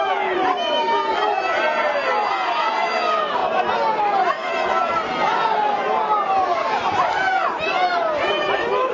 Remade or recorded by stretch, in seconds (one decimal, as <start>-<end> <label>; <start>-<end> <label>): 0.0-8.9 recorded